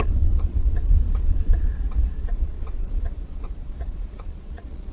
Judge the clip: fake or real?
fake